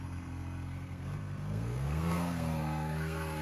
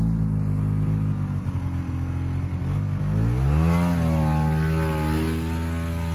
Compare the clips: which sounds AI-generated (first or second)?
first